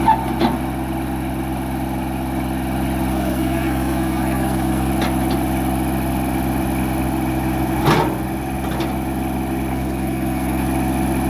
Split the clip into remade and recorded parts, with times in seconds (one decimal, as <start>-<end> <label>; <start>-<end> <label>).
0.0-3.1 recorded; 3.1-4.9 remade; 4.9-9.7 recorded; 9.7-10.6 remade; 10.6-11.3 recorded